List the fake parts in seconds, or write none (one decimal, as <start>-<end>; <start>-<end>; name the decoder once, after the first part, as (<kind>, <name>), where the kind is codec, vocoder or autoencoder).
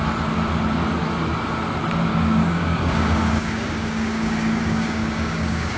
2.1-5.8 (codec, DAC)